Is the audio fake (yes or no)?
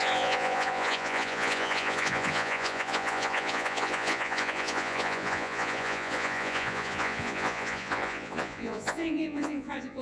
yes